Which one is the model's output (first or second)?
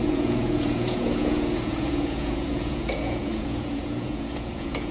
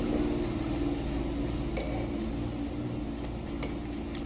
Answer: first